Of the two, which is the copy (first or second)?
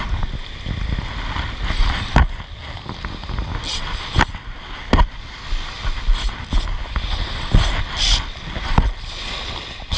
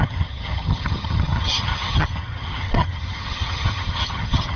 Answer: second